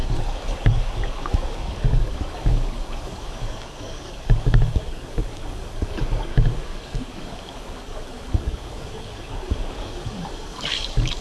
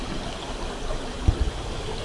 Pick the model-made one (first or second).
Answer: first